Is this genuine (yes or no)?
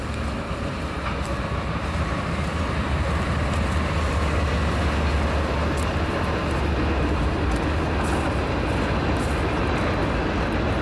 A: yes